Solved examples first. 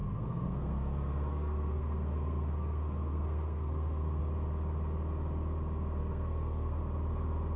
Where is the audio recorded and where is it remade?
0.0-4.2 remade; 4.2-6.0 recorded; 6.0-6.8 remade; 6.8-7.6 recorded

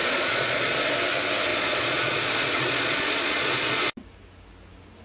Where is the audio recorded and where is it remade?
0.0-0.9 remade; 0.9-1.5 recorded; 1.5-3.8 remade; 3.8-5.0 recorded

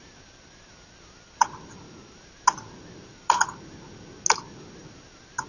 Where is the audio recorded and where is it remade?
0.0-5.5 recorded

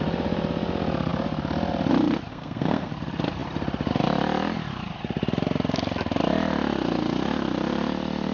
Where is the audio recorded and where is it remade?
0.0-2.3 recorded; 2.3-2.9 remade; 2.9-8.3 recorded

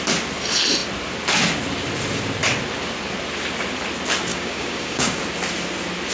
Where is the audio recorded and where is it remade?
0.0-4.3 recorded; 4.3-5.2 remade; 5.2-6.1 recorded